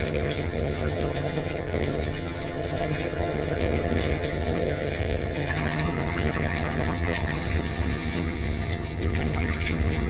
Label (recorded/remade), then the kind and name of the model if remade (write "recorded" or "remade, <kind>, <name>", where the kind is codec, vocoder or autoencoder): remade, vocoder, HiFi-GAN